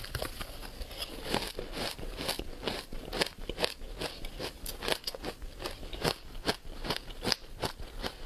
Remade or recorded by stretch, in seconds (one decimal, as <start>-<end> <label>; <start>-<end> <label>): 0.0-8.3 recorded